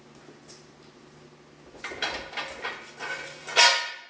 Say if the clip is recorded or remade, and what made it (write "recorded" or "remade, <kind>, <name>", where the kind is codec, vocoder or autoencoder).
recorded